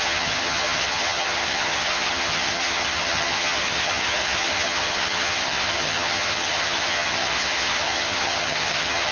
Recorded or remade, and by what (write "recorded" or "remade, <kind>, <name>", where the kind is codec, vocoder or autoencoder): remade, vocoder, HiFi-GAN